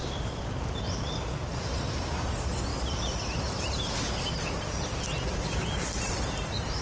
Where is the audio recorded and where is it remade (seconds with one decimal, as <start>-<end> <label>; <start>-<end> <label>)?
0.0-0.8 remade; 0.8-2.7 recorded; 2.7-6.8 remade